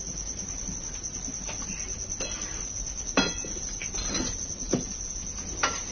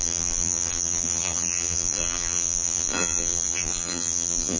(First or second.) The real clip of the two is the first